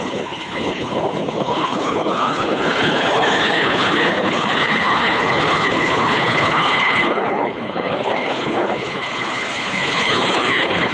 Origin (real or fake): fake